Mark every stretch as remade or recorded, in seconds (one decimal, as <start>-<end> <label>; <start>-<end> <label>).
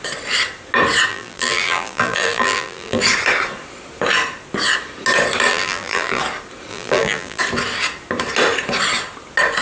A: 0.0-1.1 recorded; 1.1-3.0 remade; 3.0-5.5 recorded; 5.5-6.2 remade; 6.2-6.7 recorded; 6.7-7.4 remade; 7.4-9.6 recorded